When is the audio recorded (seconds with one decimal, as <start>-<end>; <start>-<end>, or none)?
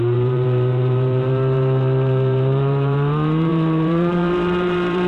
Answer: none